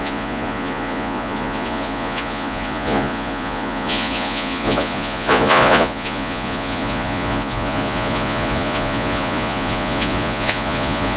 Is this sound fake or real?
fake